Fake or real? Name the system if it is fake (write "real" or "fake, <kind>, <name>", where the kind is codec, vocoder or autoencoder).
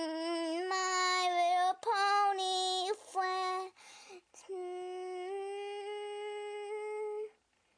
real